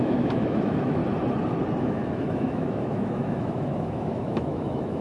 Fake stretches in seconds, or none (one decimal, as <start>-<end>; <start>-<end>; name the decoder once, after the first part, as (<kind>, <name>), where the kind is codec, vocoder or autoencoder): 0.0-1.0 (autoencoder, DAC-VAE); 1.8-5.0